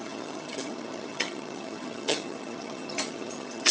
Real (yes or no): no